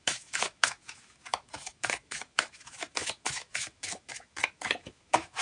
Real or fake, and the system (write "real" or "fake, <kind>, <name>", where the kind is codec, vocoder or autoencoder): fake, autoencoder, DAC-VAE